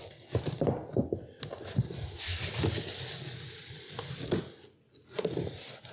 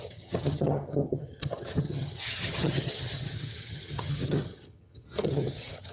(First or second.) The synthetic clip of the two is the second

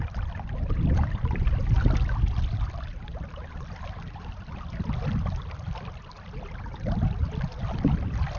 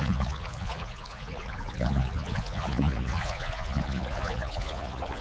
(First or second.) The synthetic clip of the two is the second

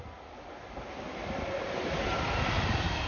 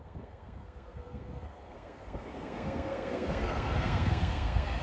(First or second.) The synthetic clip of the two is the second